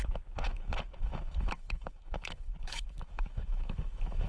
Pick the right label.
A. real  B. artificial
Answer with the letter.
B